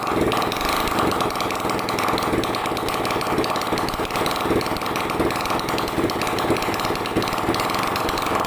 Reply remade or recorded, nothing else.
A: recorded